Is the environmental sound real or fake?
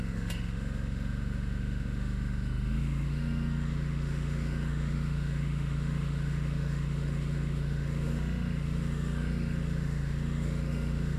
fake